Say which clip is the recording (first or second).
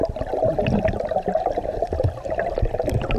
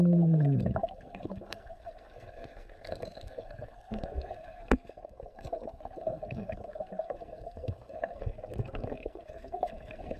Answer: first